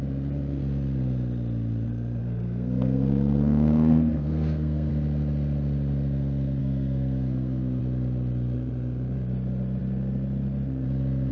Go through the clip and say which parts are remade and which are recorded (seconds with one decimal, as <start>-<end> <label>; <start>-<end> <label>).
0.0-2.2 recorded; 2.2-4.9 remade; 4.9-6.6 recorded; 6.6-7.8 remade; 7.8-11.3 recorded